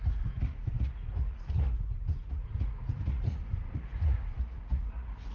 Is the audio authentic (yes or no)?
no